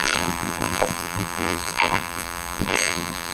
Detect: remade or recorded remade